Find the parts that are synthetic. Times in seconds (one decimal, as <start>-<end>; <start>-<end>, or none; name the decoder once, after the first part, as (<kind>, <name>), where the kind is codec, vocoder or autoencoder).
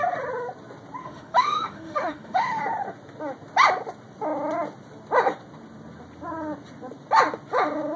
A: 1.0-2.6 (autoencoder, DAC-VAE)